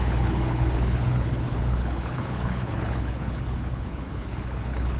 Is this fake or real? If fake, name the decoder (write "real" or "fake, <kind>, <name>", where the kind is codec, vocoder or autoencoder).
fake, codec, HILCodec